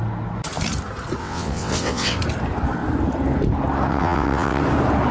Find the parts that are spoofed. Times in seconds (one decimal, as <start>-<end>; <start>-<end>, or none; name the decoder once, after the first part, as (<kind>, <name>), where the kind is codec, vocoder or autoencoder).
1.2-2.2 (vocoder, WaveNeXt); 3.9-4.6